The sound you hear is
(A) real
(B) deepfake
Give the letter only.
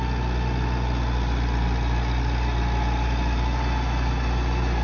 A